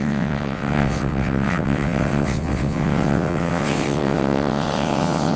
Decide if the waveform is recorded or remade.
remade